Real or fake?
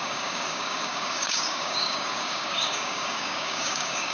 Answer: fake